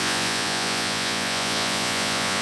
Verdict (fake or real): fake